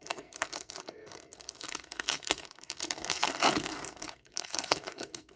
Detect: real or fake fake